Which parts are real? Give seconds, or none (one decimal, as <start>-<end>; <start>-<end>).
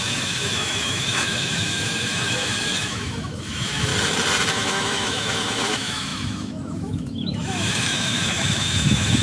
3.9-4.5